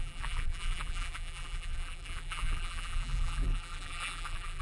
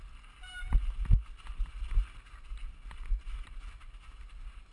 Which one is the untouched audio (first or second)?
second